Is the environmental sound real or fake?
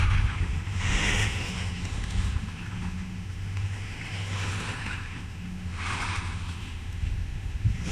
fake